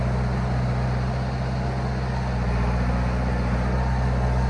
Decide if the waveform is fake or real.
real